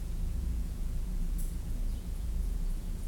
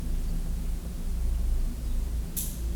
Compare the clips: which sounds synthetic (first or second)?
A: first